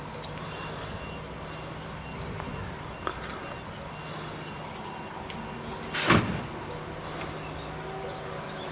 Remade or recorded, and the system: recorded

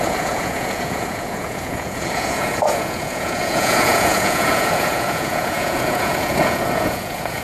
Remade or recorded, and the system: remade, vocoder, Vocos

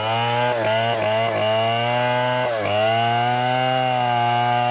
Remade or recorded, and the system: recorded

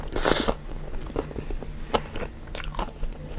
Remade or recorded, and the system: recorded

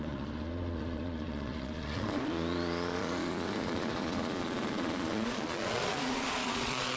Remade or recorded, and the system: remade, vocoder, Vocos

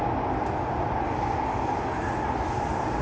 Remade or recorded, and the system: recorded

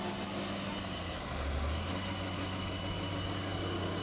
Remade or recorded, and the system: recorded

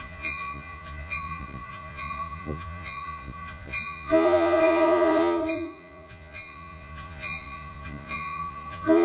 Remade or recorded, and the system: remade, vocoder, Vocos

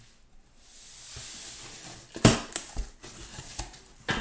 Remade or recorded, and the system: recorded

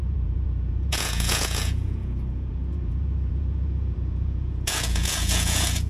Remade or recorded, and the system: remade, vocoder, Vocos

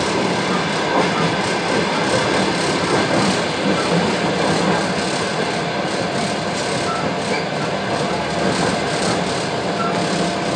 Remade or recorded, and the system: recorded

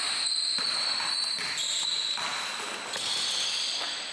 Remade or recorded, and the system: recorded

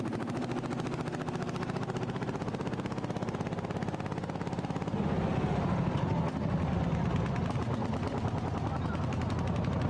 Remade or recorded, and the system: recorded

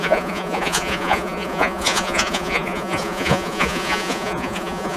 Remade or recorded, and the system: remade, vocoder, Vocos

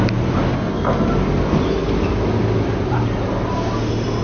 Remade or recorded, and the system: recorded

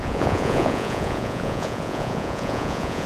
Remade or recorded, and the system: remade, vocoder, Vocos